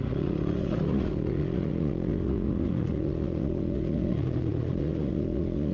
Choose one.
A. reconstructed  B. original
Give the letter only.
A